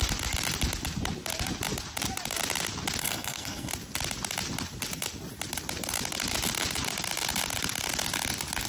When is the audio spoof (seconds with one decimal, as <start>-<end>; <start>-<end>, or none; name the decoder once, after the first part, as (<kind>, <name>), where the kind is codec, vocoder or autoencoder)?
3.0-3.7 (codec, SNAC)